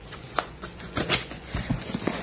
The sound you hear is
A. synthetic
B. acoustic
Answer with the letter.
A